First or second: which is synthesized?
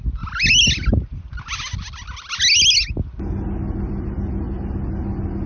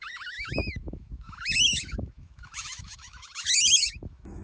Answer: second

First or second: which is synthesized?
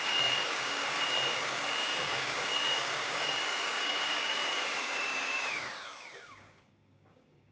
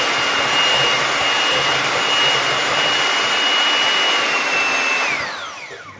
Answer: first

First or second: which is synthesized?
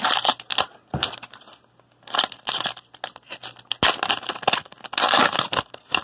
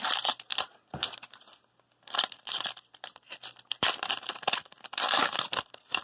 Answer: second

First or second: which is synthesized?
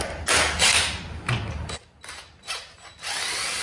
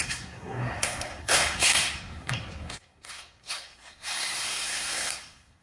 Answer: second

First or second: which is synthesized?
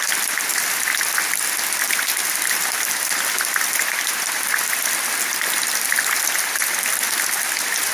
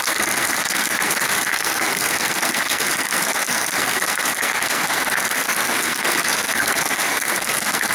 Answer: second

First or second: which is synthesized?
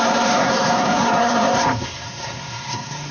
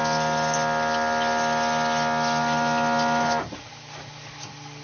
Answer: first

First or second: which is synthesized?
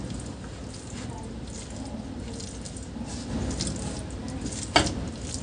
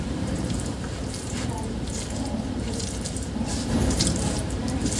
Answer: second